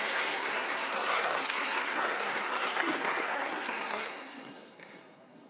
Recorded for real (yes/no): no